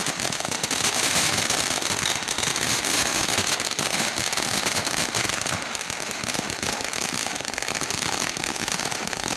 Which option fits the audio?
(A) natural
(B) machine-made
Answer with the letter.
B